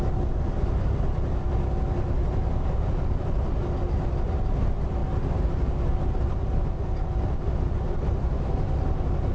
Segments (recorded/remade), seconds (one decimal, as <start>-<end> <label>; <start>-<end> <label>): 0.0-9.3 recorded